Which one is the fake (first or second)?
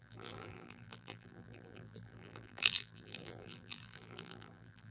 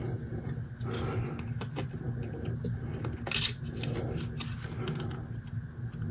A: first